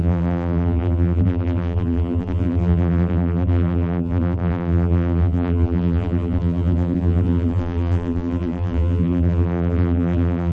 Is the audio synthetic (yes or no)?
yes